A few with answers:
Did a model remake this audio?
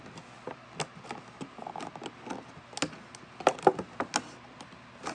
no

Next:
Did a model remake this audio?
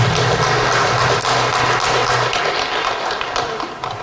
no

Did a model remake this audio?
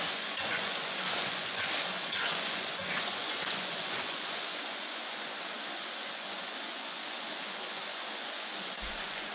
yes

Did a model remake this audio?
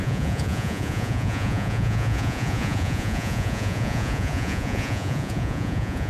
yes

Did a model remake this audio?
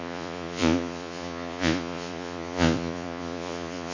yes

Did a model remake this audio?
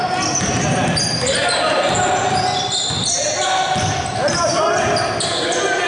no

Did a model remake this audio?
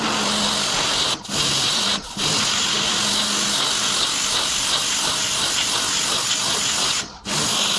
no